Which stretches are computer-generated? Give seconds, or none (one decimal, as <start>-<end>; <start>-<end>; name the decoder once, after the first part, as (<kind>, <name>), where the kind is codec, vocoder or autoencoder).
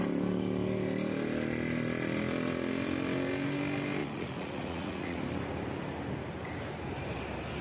4.0-5.2 (vocoder, Vocos)